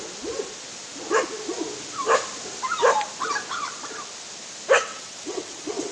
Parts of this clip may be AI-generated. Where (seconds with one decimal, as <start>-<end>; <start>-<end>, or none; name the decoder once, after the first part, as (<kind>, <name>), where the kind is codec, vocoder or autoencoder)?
4.9-5.9 (vocoder, WaveNeXt)